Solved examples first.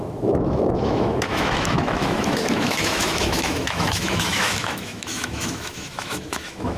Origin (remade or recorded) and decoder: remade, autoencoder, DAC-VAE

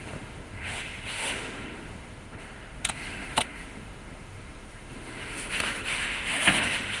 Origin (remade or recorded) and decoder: remade, autoencoder, DAC-VAE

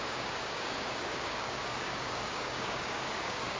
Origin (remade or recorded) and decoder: remade, codec, DAC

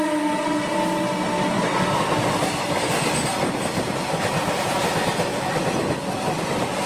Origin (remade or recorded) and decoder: recorded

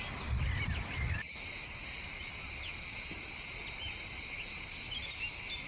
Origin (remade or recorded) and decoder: recorded